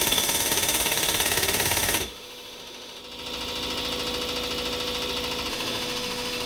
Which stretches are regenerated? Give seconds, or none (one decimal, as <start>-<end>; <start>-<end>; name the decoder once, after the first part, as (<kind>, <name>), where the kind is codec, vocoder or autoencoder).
0.0-3.0 (autoencoder, DAC-VAE); 5.5-6.5